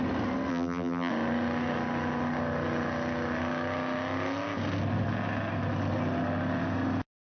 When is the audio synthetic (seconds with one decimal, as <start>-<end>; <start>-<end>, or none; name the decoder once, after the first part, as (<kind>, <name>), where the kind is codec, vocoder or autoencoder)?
0.5-1.1 (vocoder, BigVGAN v2)